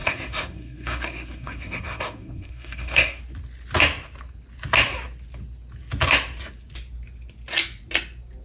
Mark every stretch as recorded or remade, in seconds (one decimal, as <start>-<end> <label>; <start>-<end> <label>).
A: 0.0-3.2 remade; 3.2-8.4 recorded